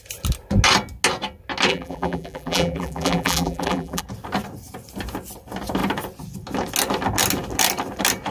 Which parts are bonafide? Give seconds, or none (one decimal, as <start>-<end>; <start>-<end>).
0.0-1.7; 4.0-8.3